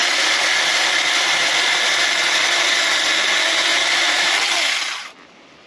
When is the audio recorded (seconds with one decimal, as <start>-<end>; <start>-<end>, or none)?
0.0-0.7; 2.8-3.7; 4.3-5.7